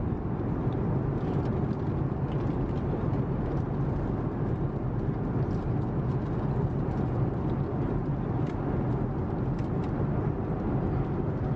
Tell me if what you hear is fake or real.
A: real